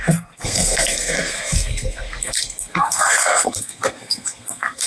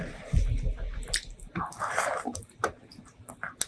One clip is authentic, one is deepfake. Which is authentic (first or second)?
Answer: second